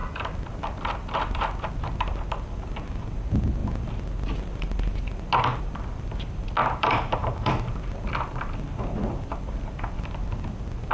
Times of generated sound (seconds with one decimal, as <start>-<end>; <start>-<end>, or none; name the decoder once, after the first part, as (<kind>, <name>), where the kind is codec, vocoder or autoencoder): 6.6-7.5 (vocoder, BigVGAN v2)